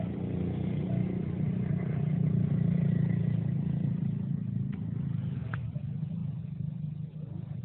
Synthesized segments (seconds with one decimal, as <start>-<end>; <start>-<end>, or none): none